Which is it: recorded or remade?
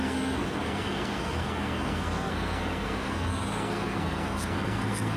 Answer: remade